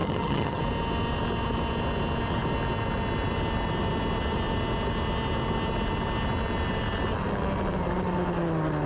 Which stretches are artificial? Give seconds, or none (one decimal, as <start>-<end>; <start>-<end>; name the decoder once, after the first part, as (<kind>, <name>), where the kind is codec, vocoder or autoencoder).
0.0-0.6 (vocoder, HiFi-GAN)